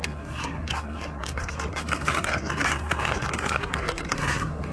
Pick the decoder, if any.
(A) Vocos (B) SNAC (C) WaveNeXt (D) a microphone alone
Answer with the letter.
B